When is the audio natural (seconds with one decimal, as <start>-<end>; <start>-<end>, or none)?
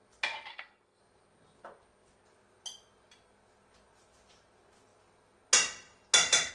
0.0-0.5; 1.0-6.5